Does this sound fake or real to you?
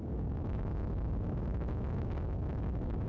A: fake